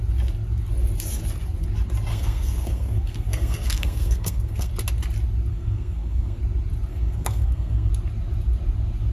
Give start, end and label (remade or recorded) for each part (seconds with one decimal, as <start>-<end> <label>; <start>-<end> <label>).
0.0-2.1 recorded; 2.1-4.7 remade; 4.7-5.5 recorded; 5.5-6.4 remade; 6.4-6.9 recorded; 6.9-7.9 remade; 7.9-9.1 recorded